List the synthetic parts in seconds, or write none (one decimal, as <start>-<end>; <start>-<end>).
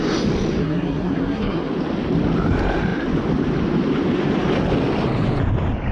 0.6-1.7